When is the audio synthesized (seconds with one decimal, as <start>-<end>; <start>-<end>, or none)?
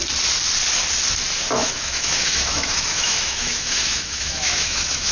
1.6-5.1